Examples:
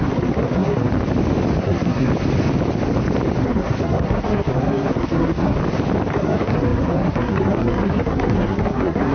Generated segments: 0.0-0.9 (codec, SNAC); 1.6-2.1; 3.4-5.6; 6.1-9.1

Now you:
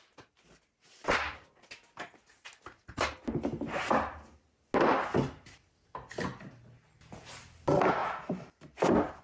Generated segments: none

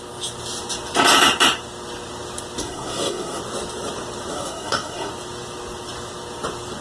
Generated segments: 2.6-3.4 (codec, SNAC); 4.3-5.1

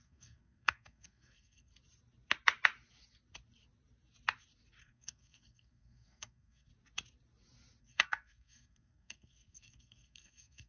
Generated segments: 0.0-1.7 (codec, SNAC); 4.8-6.7; 7.8-10.7

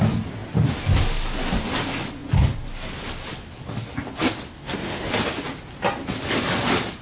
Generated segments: 4.6-5.1 (codec, SNAC)